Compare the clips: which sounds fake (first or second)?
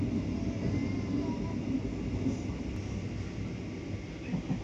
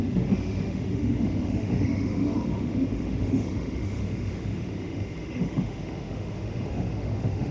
second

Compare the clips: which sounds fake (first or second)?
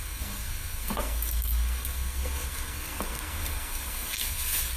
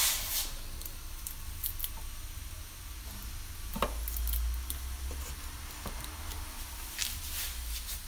first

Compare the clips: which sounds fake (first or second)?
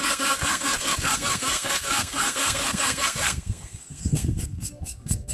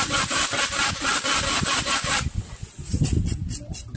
first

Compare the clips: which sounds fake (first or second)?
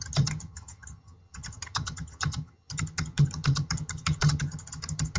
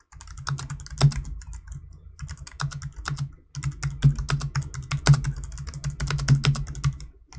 first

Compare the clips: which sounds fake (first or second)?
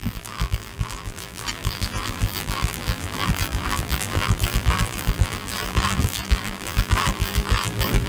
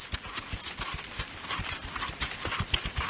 first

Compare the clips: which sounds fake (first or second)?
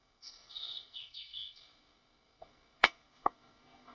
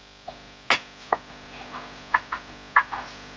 first